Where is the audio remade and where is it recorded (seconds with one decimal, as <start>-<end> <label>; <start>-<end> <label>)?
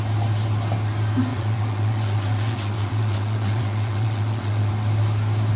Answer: 0.0-1.3 recorded; 1.3-4.7 remade; 4.7-5.6 recorded